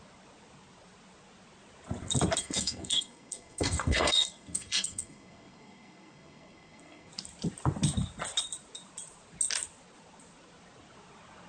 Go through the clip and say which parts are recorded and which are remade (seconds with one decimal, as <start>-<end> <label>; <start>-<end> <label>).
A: 0.0-2.4 recorded; 2.4-7.1 remade; 7.1-11.5 recorded